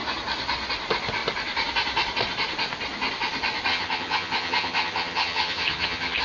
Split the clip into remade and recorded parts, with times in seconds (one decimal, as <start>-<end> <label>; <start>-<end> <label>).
0.0-3.7 recorded; 3.7-6.2 remade